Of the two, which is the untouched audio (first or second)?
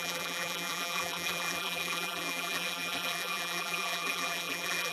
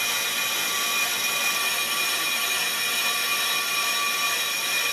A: second